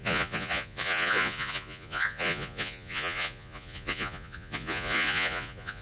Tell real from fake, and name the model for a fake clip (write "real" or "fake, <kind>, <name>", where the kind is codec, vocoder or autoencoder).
fake, vocoder, Vocos